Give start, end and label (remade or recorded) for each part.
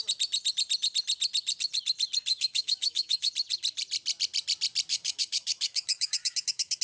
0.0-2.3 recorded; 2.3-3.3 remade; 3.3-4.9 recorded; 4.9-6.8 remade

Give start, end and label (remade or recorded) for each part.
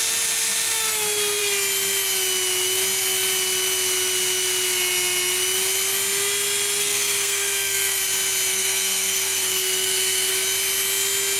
0.0-6.8 recorded; 6.8-8.0 remade; 8.0-8.5 recorded; 8.5-10.3 remade; 10.3-11.4 recorded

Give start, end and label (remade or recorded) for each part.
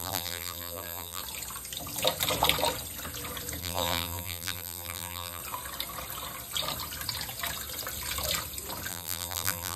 0.0-1.2 remade; 1.2-3.6 recorded; 3.6-5.4 remade; 5.4-8.9 recorded; 8.9-9.8 remade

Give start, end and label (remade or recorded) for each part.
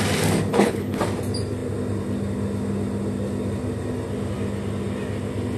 0.0-0.5 recorded; 0.5-1.0 remade; 1.0-5.6 recorded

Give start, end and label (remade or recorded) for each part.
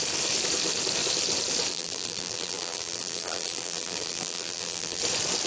0.0-1.7 recorded; 1.7-5.0 remade; 5.0-5.5 recorded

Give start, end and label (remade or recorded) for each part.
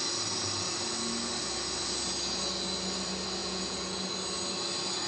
0.0-3.4 recorded; 3.4-4.0 remade; 4.0-5.1 recorded